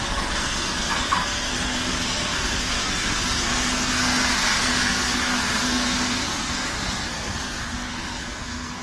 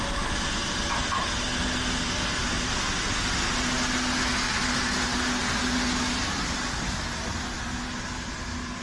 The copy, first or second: first